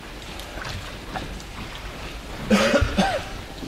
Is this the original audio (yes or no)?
yes